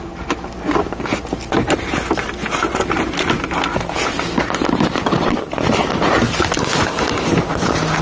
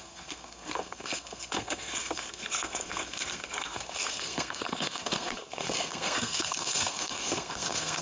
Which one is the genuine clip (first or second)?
first